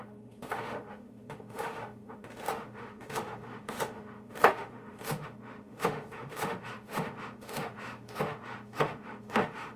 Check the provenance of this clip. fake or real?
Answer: fake